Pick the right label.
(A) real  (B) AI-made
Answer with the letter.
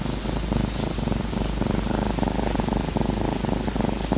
A